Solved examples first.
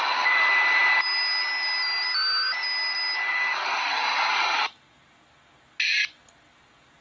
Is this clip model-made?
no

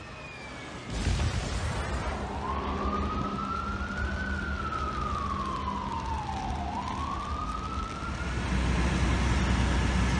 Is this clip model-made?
no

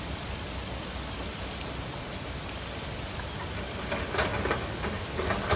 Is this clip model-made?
no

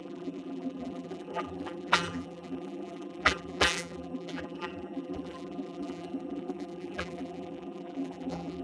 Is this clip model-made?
yes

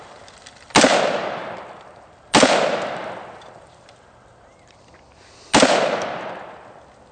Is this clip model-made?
no